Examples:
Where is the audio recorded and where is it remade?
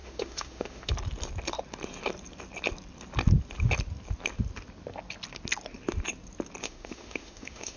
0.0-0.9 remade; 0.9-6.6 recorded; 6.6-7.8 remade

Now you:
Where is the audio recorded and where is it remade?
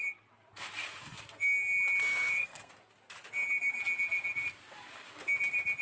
0.0-2.0 recorded; 2.0-2.7 remade; 2.7-5.8 recorded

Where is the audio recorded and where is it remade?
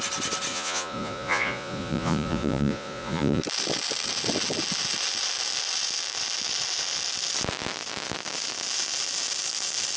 0.0-0.5 recorded; 0.5-3.4 remade; 3.4-10.0 recorded